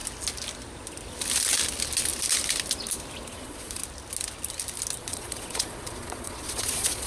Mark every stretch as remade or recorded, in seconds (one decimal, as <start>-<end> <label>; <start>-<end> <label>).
0.0-3.3 recorded; 3.3-3.8 remade; 3.8-5.0 recorded; 5.0-7.1 remade